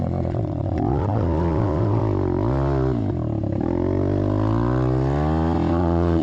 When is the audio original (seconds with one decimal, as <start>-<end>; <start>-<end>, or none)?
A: 2.0-5.7